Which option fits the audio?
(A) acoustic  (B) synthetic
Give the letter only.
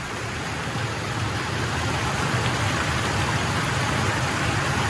A